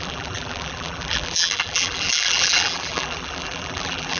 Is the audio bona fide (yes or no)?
no